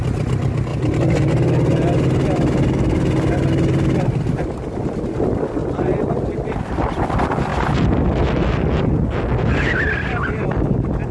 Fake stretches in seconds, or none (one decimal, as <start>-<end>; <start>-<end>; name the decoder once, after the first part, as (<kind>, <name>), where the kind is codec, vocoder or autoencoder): 0.7-1.3 (vocoder, BigVGAN v2); 5.6-6.9; 7.5-8.5